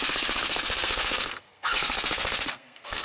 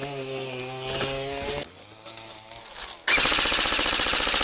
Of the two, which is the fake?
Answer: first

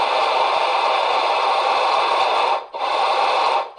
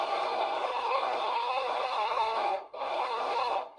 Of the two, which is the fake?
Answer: second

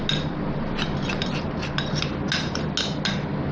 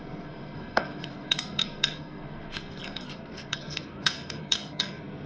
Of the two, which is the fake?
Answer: second